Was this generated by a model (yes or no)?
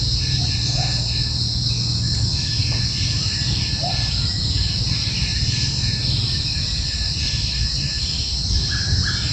no